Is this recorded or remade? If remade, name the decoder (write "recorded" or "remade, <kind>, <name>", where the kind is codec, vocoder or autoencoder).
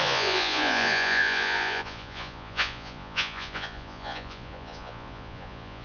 remade, vocoder, Vocos